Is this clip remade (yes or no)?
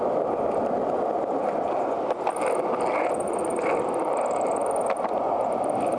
no